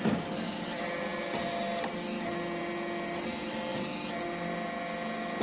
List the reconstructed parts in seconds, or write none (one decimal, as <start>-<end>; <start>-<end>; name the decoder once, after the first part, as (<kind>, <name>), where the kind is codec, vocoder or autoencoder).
none